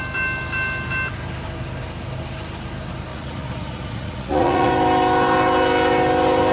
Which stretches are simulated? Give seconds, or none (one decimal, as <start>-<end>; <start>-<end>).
3.1-4.7